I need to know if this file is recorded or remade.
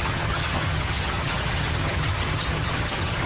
remade